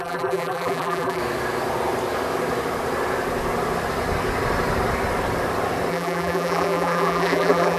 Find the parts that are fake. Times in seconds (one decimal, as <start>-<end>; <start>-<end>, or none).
0.0-1.2; 5.9-7.8